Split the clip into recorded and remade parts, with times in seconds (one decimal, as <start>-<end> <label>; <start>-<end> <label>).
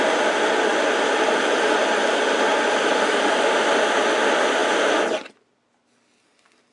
0.0-0.7 recorded; 0.7-1.8 remade; 1.8-2.5 recorded; 2.5-3.6 remade; 3.6-4.6 recorded; 4.6-5.6 remade; 5.6-6.7 recorded